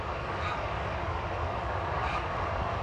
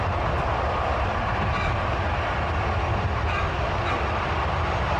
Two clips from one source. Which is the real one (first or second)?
second